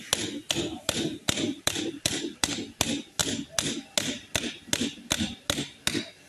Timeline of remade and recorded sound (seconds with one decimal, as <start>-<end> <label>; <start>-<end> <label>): 0.0-0.4 recorded; 0.4-2.5 remade; 2.5-6.3 recorded